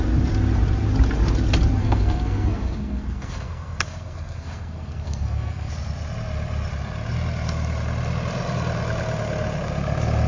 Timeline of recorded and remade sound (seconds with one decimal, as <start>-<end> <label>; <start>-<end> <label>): 0.0-1.8 recorded; 1.8-5.7 remade; 5.7-10.3 recorded

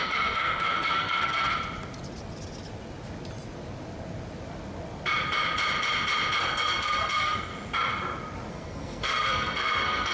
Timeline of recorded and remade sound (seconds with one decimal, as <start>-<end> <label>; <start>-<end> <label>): 0.0-1.5 remade; 1.5-6.4 recorded; 6.4-7.5 remade; 7.5-8.5 recorded; 8.5-10.1 remade